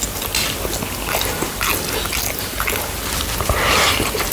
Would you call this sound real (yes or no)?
yes